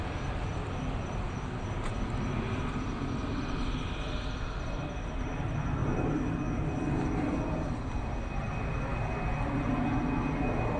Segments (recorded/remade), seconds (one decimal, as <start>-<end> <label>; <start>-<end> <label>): 0.0-10.8 recorded